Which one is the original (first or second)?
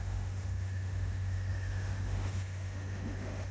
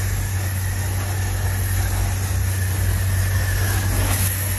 second